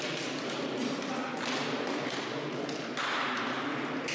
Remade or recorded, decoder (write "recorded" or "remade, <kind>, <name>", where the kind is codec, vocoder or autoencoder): recorded